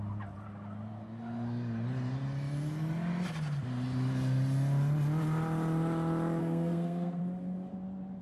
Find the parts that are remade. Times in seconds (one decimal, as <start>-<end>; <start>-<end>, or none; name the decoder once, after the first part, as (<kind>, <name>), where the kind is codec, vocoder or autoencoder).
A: 6.4-7.2 (codec, SNAC)